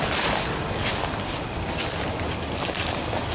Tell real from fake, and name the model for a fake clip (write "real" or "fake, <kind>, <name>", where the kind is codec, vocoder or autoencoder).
real